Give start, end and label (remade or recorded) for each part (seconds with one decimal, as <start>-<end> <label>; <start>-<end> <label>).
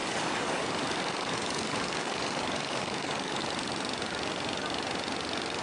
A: 0.0-3.4 remade; 3.4-5.6 recorded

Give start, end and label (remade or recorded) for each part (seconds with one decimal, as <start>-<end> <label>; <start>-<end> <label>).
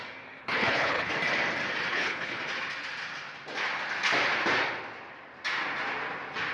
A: 0.0-0.4 recorded; 0.4-1.1 remade; 1.1-1.9 recorded; 1.9-2.4 remade; 2.4-6.5 recorded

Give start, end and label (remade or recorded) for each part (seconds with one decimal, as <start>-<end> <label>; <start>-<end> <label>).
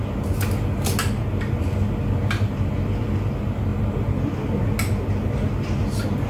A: 0.0-6.3 recorded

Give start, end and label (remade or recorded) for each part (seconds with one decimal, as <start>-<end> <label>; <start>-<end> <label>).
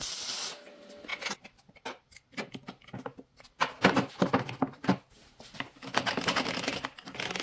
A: 0.0-7.4 recorded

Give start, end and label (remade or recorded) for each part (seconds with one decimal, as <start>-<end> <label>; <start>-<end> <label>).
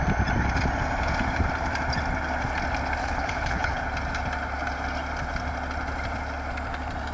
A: 0.0-3.0 recorded; 3.0-3.8 remade; 3.8-7.1 recorded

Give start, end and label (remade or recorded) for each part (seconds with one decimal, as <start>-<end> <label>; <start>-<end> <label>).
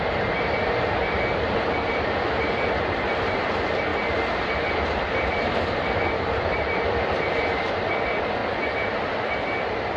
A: 0.0-3.9 remade; 3.9-4.7 recorded; 4.7-8.4 remade; 8.4-10.0 recorded